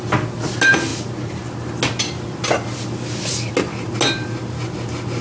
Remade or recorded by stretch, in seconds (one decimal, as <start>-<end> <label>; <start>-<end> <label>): 0.0-5.2 recorded